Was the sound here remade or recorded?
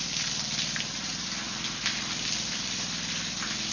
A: remade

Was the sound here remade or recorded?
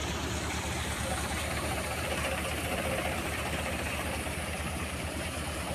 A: remade